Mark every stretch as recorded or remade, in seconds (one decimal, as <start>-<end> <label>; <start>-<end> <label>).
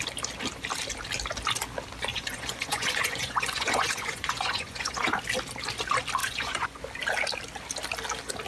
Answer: 0.0-2.1 recorded; 2.1-5.1 remade; 5.1-6.2 recorded; 6.2-6.8 remade; 6.8-8.5 recorded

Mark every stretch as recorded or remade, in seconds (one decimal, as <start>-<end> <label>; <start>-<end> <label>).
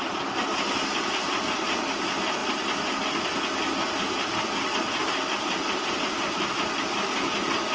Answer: 0.0-7.7 recorded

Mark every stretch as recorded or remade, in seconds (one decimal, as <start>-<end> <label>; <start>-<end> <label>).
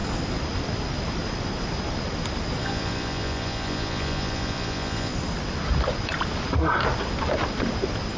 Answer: 0.0-2.6 recorded; 2.6-5.1 remade; 5.1-8.2 recorded